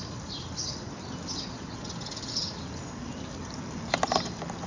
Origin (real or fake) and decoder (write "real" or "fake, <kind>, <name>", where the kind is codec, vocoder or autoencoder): real